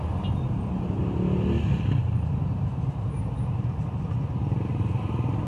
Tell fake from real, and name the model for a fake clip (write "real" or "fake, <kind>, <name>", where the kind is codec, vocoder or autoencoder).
real